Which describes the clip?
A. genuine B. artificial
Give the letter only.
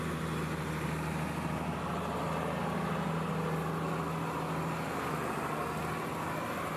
A